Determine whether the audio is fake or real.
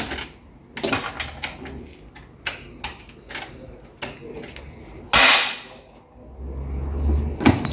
real